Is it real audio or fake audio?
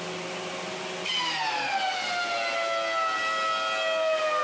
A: real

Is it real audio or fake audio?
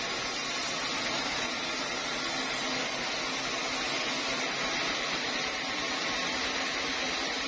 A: real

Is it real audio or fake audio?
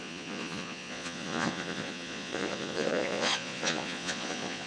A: fake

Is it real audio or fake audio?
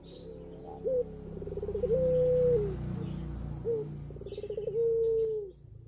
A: real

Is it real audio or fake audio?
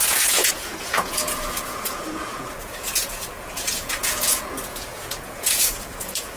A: fake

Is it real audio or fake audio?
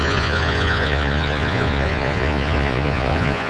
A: fake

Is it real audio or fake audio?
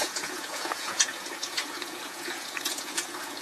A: fake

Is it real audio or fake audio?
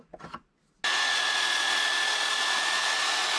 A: real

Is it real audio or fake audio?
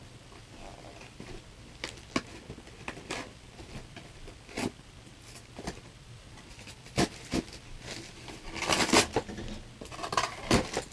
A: real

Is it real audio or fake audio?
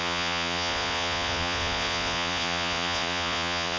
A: fake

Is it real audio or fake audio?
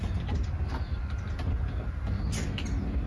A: real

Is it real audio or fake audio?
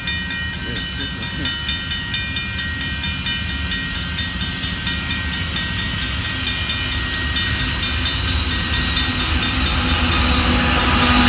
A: real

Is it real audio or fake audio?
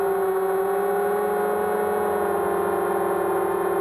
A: real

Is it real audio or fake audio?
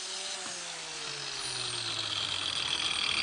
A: real